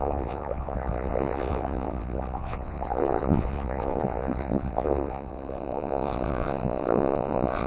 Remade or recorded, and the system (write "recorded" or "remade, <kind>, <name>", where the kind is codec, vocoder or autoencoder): remade, vocoder, WaveNeXt